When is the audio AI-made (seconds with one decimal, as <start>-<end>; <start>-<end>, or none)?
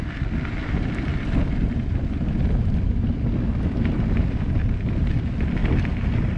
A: none